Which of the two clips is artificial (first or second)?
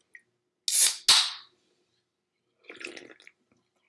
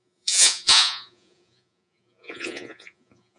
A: second